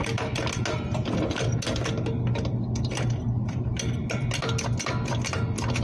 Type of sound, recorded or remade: recorded